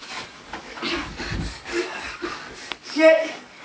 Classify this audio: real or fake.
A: fake